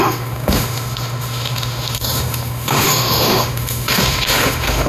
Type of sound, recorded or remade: remade